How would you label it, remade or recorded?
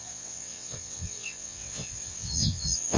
remade